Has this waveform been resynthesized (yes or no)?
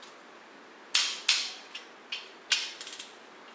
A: no